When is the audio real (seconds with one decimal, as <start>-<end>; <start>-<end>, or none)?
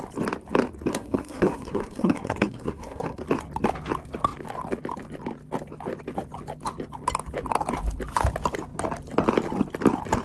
0.0-0.9; 3.2-10.2